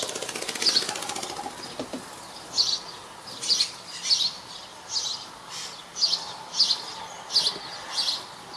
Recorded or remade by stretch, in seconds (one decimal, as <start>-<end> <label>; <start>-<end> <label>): 0.0-8.6 recorded